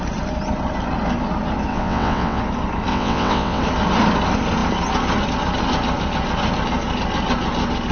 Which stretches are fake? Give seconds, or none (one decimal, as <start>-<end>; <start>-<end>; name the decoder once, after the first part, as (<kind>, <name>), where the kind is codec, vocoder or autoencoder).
1.7-2.4 (vocoder, WaveNeXt); 2.9-3.6